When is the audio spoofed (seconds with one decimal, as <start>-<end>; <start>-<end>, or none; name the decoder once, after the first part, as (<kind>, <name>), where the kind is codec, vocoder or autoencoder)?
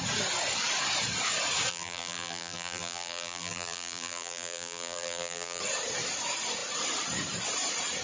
1.7-5.6 (vocoder, BigVGAN v2)